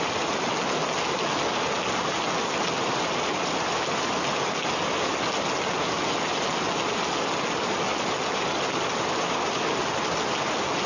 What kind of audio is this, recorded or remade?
recorded